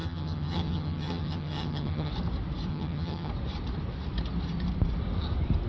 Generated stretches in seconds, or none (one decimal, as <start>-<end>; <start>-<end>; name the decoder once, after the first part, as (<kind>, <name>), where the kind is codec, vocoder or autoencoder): 0.0-2.1 (vocoder, HiFi-GAN); 2.7-3.3